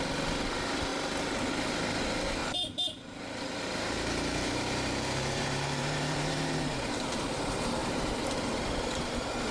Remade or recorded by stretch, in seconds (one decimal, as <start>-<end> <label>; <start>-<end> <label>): 0.0-2.4 recorded; 2.4-6.9 remade; 6.9-9.5 recorded